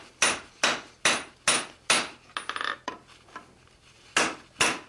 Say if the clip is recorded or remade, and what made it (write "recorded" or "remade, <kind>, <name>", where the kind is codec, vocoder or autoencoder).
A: recorded